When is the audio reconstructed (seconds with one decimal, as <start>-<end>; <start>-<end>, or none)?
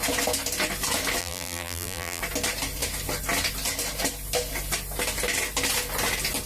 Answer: 1.2-2.2